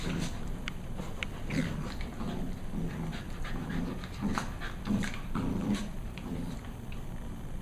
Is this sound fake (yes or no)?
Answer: no